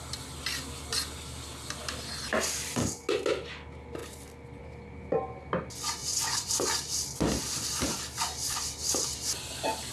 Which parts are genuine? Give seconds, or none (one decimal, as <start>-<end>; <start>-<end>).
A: 0.0-6.0; 6.5-9.9